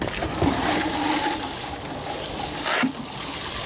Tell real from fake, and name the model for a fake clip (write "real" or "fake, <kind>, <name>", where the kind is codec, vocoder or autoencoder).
real